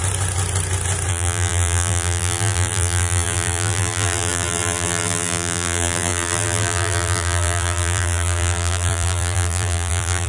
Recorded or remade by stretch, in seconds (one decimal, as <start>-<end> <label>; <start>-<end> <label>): 0.0-1.1 recorded; 1.1-10.3 remade